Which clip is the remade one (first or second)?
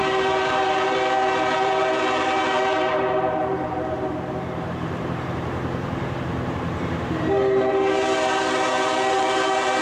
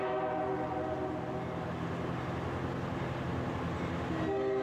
first